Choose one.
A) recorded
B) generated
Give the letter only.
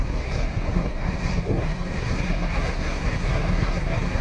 B